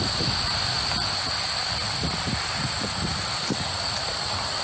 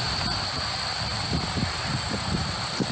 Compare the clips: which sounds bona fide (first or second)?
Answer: first